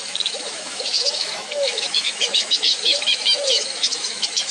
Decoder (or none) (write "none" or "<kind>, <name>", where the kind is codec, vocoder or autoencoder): autoencoder, DAC-VAE